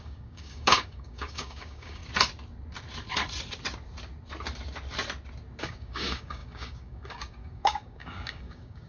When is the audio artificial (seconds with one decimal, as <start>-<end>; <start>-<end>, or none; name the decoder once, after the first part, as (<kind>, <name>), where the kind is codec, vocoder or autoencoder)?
0.0-2.0 (codec, DAC); 5.6-8.9